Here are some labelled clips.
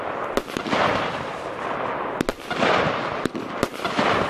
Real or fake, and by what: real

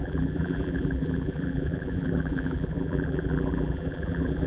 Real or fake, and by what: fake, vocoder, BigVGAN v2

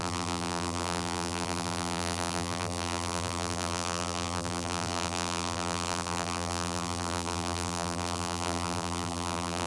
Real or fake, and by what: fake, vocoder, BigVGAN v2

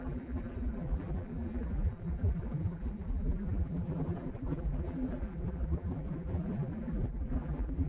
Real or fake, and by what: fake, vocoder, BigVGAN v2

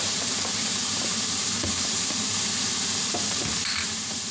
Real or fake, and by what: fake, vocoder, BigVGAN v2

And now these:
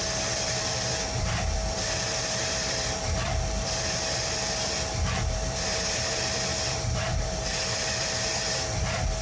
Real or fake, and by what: fake, vocoder, BigVGAN v2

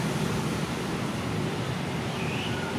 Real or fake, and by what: fake, vocoder, BigVGAN v2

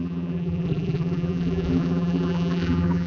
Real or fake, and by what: fake, vocoder, BigVGAN v2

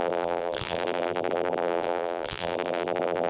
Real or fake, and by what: fake, vocoder, BigVGAN v2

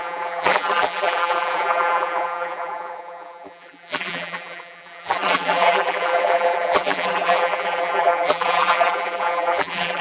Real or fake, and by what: fake, vocoder, BigVGAN v2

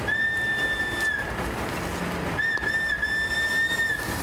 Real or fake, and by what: real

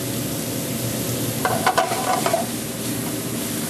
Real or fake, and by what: real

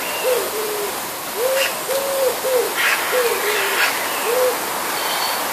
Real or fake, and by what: real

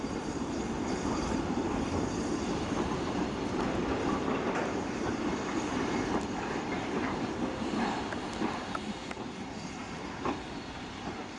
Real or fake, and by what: fake, vocoder, BigVGAN v2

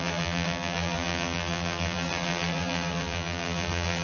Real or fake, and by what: fake, vocoder, BigVGAN v2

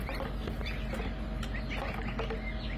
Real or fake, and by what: real